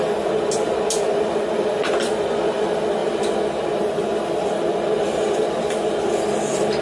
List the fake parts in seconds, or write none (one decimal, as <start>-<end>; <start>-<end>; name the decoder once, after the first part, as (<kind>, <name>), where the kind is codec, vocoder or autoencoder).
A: none